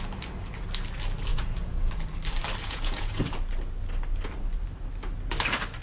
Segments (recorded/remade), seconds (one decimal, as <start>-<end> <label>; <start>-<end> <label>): 0.0-1.3 recorded; 1.3-1.9 remade; 1.9-2.6 recorded; 2.6-3.2 remade; 3.2-5.8 recorded